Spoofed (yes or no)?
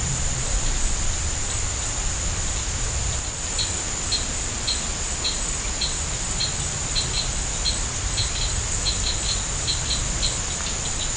no